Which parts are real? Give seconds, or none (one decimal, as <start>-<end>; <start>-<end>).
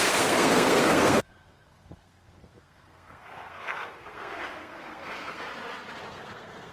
5.5-6.1